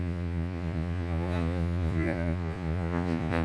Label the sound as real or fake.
fake